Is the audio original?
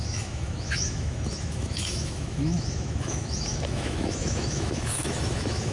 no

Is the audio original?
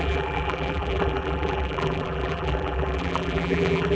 no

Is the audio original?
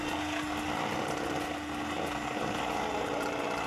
yes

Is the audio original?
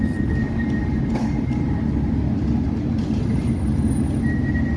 yes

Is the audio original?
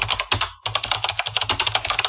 yes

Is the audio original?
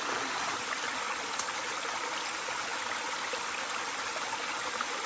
yes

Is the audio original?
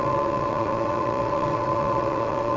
no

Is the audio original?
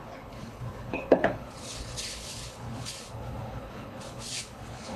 no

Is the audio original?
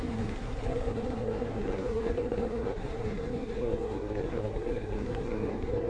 no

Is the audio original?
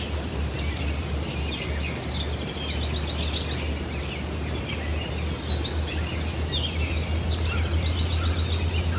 yes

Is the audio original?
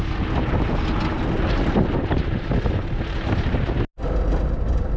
yes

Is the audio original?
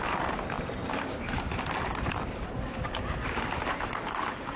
no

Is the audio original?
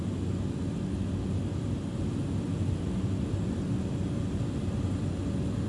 yes